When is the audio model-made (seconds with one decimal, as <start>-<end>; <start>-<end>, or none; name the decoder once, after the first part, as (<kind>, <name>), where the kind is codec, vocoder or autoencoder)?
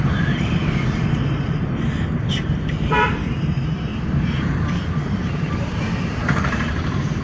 0.0-3.9 (vocoder, BigVGAN v2); 4.9-7.2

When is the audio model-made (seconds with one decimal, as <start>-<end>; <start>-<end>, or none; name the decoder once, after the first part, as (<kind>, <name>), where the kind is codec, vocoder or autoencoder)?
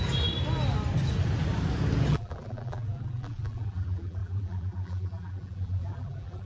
2.1-6.5 (vocoder, BigVGAN v2)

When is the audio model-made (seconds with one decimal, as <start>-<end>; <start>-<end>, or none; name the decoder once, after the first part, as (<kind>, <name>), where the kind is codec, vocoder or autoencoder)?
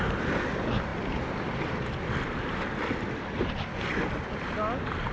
none